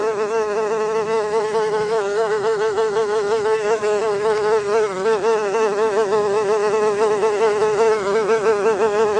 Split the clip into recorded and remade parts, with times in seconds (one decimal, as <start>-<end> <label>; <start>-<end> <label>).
0.0-9.2 remade